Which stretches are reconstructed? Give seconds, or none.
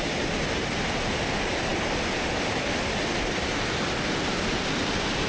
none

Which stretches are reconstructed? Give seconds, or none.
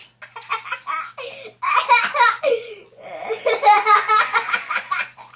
2.4-5.4 (vocoder, Vocos)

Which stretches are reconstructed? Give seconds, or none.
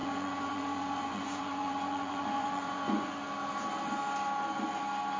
0.0-3.1 (vocoder, Vocos)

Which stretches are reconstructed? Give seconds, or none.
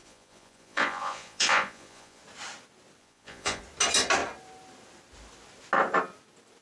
0.0-2.2 (vocoder, Vocos); 3.0-3.6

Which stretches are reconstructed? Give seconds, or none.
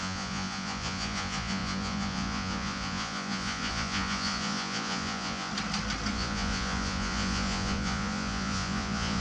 0.0-5.5 (vocoder, Vocos); 6.1-9.2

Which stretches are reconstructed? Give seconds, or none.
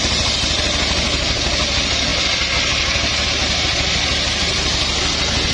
none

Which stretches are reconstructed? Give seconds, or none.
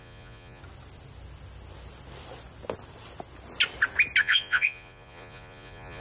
0.0-0.6 (vocoder, Vocos); 4.2-6.0